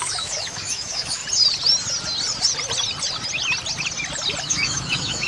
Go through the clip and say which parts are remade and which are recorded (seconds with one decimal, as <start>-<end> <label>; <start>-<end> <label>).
0.0-1.2 remade; 1.2-4.4 recorded; 4.4-5.3 remade

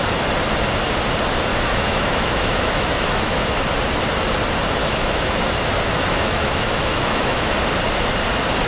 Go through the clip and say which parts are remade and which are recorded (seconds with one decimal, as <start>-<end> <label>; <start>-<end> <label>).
0.0-1.5 recorded; 1.5-3.6 remade; 3.6-4.8 recorded; 4.8-7.5 remade; 7.5-8.7 recorded

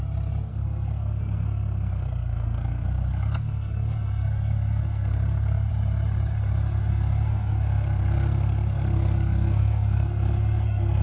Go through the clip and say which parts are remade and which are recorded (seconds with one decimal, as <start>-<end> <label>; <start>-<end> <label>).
0.0-0.5 recorded; 0.5-5.7 remade; 5.7-6.9 recorded; 6.9-11.0 remade

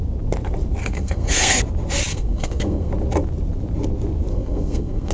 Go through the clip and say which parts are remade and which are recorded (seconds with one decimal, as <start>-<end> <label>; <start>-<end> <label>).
0.0-0.8 recorded; 0.8-1.6 remade; 1.6-2.1 recorded; 2.1-2.9 remade; 2.9-4.3 recorded; 4.3-5.1 remade

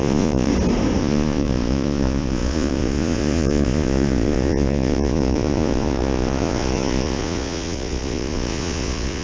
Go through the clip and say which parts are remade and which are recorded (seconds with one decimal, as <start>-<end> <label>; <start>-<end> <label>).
0.0-0.5 remade; 0.5-1.0 recorded; 1.0-9.2 remade

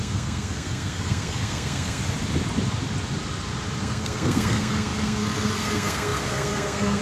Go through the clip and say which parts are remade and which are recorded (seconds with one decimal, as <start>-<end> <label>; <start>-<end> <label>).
0.0-2.0 remade; 2.0-3.8 recorded; 3.8-7.0 remade

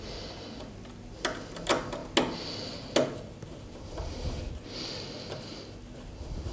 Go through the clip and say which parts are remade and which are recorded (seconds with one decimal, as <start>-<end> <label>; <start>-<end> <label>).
0.0-6.5 recorded